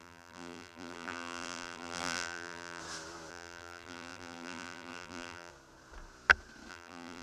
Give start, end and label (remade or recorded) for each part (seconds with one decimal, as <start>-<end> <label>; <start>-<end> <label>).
0.0-2.8 remade; 2.8-3.3 recorded; 3.3-5.5 remade; 5.5-6.7 recorded; 6.7-7.2 remade